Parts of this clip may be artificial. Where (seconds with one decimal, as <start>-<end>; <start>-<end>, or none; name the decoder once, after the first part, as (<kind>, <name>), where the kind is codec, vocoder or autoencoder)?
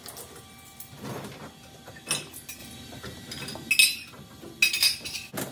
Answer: 2.6-3.7 (vocoder, BigVGAN v2)